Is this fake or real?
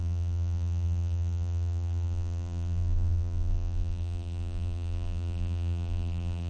fake